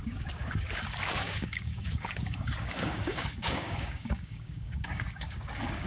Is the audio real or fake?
fake